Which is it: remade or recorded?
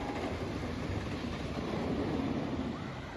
recorded